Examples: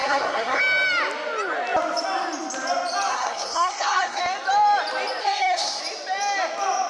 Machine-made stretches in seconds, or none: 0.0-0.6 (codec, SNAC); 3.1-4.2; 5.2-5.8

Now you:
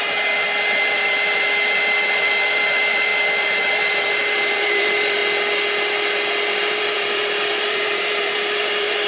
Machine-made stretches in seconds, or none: 0.0-5.2 (vocoder, BigVGAN v2); 6.5-9.1

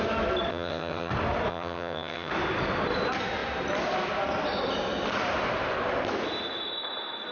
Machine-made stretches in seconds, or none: 0.5-1.1 (vocoder, HiFi-GAN); 1.5-2.3

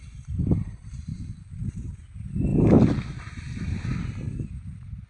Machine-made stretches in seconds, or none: 1.1-1.7 (vocoder, BigVGAN v2)

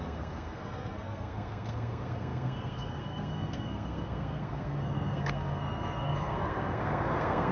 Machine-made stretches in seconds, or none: 0.0-7.5 (codec, SNAC)